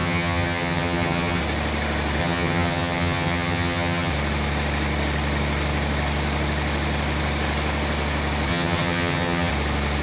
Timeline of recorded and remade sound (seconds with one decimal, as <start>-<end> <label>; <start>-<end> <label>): 0.0-1.4 remade; 1.4-2.2 recorded; 2.2-4.1 remade; 4.1-8.5 recorded; 8.5-9.5 remade; 9.5-10.0 recorded